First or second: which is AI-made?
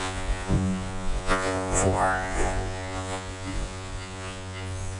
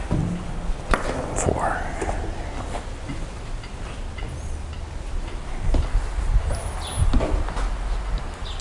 first